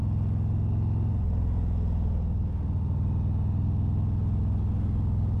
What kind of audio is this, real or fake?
real